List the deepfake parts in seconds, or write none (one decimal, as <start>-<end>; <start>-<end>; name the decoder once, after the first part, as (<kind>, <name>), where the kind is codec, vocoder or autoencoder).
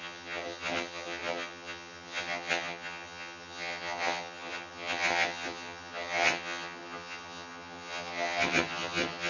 0.0-9.3 (vocoder, HiFi-GAN)